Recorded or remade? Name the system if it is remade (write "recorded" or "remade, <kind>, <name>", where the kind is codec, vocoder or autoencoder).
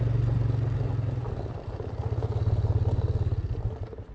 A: recorded